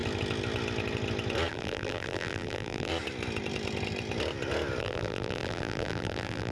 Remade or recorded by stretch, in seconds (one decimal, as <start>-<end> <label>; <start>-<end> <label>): 0.0-1.5 recorded; 1.5-2.9 remade; 2.9-4.8 recorded; 4.8-6.5 remade